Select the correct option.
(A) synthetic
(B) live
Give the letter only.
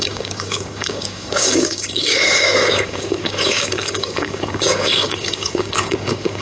A